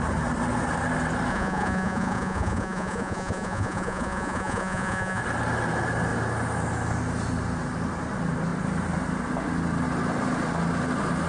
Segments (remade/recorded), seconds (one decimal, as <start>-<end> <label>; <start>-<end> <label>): 0.0-1.3 recorded; 1.3-5.2 remade; 5.2-11.3 recorded